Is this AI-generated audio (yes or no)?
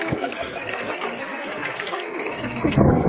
yes